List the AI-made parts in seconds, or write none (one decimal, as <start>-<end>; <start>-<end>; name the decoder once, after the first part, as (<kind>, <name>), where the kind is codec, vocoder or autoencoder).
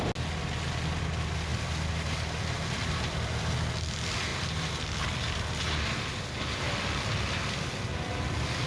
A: 1.5-3.4 (vocoder, BigVGAN v2); 4.3-5.6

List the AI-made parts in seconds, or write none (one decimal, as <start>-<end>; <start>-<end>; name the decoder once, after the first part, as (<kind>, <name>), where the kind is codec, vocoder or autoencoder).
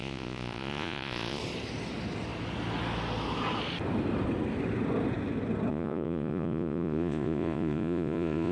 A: 0.0-1.4 (vocoder, Vocos); 5.7-8.5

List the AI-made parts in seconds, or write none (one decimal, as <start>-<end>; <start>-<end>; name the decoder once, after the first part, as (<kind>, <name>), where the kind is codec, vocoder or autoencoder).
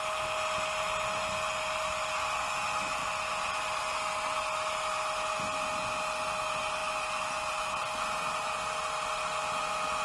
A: none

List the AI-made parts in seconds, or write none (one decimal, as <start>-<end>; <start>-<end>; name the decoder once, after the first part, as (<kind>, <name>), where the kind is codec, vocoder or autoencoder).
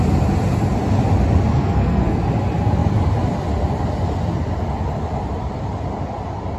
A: 1.5-2.2 (codec, SNAC)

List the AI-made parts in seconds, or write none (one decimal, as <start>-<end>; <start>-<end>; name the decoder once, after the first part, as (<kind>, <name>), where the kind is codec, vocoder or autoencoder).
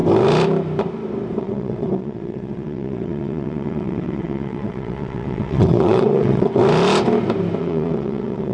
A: 1.4-6.6 (vocoder, WaveNeXt); 7.6-8.5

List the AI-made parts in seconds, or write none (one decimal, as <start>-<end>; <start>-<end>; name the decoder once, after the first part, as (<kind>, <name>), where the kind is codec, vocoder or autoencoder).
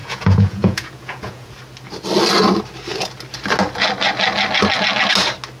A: 0.0-1.5 (vocoder, Vocos)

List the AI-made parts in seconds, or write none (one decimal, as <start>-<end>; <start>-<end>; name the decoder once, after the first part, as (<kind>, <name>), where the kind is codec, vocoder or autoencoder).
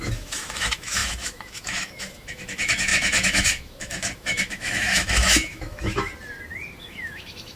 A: 0.0-6.1 (autoencoder, DAC-VAE); 6.8-7.6